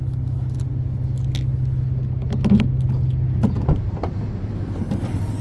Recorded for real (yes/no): yes